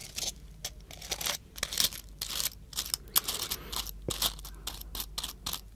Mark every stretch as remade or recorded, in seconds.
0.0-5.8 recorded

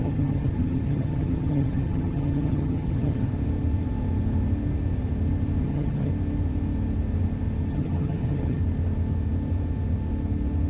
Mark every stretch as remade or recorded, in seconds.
0.0-3.3 remade; 3.3-5.6 recorded; 5.6-6.1 remade; 6.1-7.7 recorded; 7.7-8.6 remade; 8.6-10.7 recorded

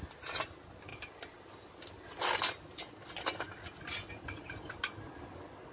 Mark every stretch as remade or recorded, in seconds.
0.0-5.7 recorded

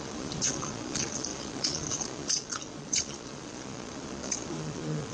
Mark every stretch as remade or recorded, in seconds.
0.0-5.1 remade

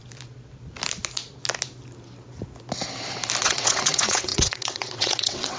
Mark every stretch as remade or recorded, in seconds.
0.0-3.4 recorded; 3.4-5.6 remade